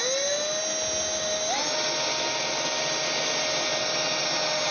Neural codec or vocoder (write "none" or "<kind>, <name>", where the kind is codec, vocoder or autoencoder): none